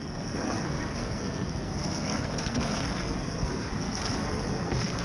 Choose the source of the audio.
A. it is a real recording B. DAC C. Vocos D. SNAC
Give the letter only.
D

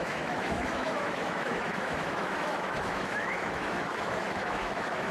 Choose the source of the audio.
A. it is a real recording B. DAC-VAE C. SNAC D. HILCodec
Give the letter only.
B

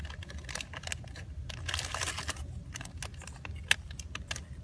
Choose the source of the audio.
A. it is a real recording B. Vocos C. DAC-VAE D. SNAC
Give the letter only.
A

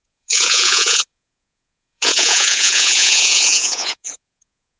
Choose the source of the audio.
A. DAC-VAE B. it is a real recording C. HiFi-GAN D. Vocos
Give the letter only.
D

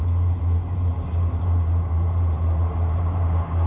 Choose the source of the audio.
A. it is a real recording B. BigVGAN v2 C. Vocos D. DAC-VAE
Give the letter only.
A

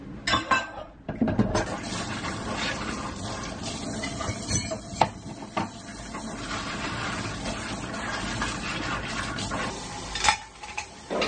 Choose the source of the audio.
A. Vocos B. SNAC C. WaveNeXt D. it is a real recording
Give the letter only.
D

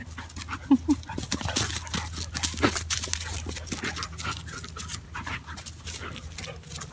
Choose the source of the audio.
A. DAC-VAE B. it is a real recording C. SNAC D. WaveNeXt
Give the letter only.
B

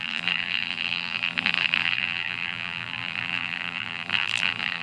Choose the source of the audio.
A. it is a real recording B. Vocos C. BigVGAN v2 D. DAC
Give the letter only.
C